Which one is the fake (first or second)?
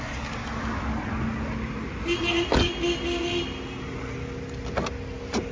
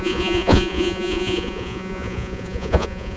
second